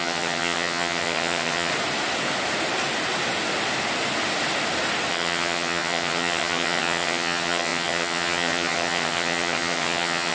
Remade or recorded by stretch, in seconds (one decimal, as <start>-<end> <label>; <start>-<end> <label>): 0.0-1.7 remade; 1.7-5.1 recorded; 5.1-10.3 remade

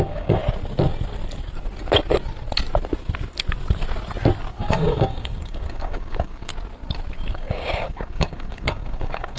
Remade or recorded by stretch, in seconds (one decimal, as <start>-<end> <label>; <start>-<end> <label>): 0.0-0.4 remade; 0.4-4.6 recorded; 4.6-6.5 remade; 6.5-7.3 recorded; 7.3-9.4 remade

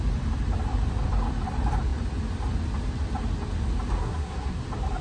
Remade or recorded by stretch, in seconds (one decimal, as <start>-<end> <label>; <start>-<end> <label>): 0.0-4.0 recorded; 4.0-4.6 remade; 4.6-5.0 recorded

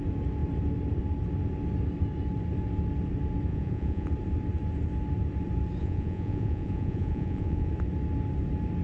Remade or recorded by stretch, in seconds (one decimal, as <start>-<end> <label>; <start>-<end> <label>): 0.0-3.5 recorded; 3.5-4.1 remade; 4.1-5.8 recorded; 5.8-7.7 remade; 7.7-8.8 recorded